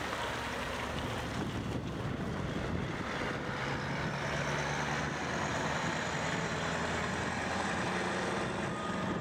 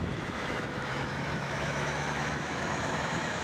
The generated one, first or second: second